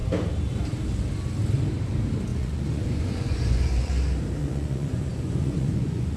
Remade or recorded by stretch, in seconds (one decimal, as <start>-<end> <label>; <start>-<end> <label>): 0.0-2.3 recorded; 2.3-3.9 remade; 3.9-4.4 recorded; 4.4-6.2 remade